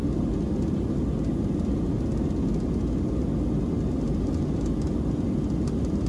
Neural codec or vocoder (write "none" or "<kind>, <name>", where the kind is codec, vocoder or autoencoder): none